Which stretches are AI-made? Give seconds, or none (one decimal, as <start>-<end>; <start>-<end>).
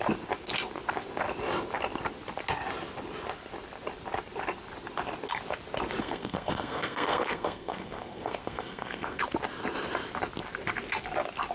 6.0-9.2